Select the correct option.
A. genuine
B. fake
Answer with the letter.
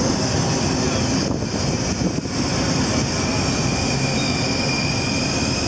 A